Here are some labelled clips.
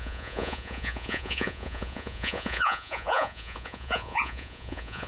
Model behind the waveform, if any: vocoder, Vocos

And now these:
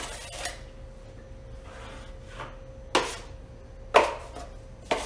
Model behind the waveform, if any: none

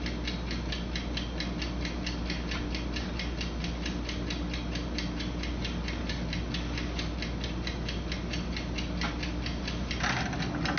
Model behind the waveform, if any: none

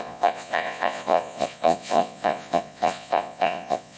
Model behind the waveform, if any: vocoder, Vocos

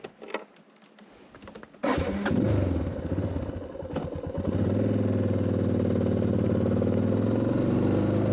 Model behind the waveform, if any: none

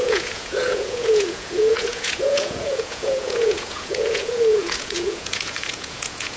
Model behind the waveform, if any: vocoder, Vocos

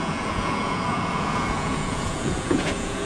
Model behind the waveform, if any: vocoder, Vocos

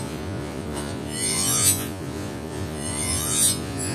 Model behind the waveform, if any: vocoder, Vocos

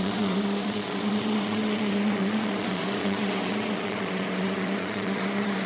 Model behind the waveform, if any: vocoder, Vocos